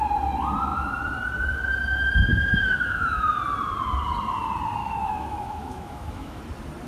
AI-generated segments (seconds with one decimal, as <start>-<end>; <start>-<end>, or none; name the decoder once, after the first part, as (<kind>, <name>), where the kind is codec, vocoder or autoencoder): 2.3-3.4 (autoencoder, DAC-VAE); 4.8-6.4